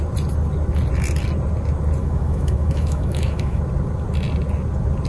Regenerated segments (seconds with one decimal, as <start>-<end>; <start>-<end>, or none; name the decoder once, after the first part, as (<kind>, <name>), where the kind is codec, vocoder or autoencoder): 2.0-3.6 (autoencoder, DAC-VAE)